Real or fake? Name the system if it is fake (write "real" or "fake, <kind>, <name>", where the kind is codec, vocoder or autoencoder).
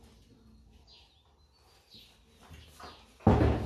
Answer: real